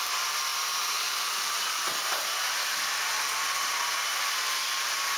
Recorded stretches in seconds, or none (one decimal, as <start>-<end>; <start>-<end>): 0.0-5.2